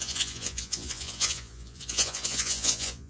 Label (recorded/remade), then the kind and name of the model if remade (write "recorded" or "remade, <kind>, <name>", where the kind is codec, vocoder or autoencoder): remade, vocoder, Vocos